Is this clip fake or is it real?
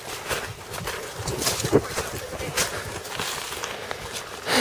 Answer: real